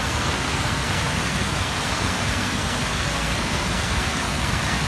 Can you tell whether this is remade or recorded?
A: remade